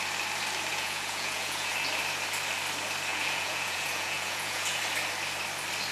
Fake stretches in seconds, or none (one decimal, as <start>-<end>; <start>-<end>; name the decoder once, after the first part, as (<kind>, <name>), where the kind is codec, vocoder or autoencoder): 0.7-1.7 (vocoder, Vocos); 3.1-4.8